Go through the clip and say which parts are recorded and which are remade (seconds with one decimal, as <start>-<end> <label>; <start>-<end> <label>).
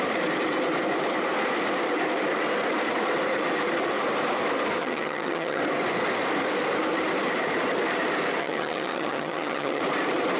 0.0-4.8 recorded; 4.8-5.6 remade; 5.6-8.4 recorded; 8.4-9.8 remade; 9.8-10.4 recorded